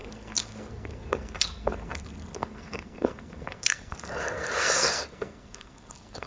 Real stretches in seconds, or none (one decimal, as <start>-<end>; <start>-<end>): none